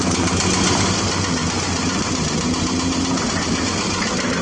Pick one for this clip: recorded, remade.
recorded